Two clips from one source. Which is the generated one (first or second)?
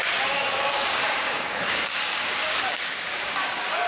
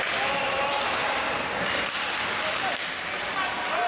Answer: first